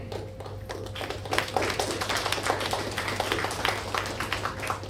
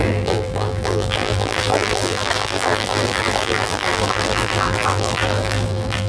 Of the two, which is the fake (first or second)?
second